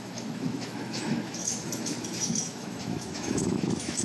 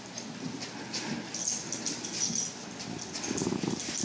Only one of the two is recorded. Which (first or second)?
second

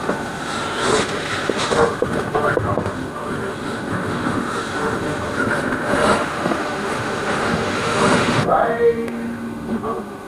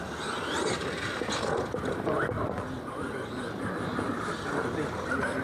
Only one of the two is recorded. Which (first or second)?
second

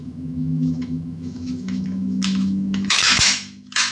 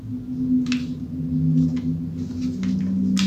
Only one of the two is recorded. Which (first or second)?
second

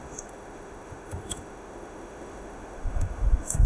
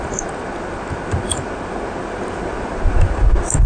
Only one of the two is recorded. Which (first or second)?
second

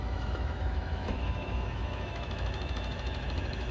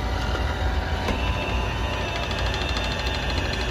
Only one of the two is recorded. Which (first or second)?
second